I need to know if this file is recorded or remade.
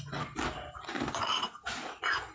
recorded